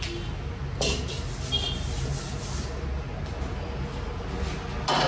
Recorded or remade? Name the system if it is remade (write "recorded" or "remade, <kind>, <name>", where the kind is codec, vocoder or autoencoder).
recorded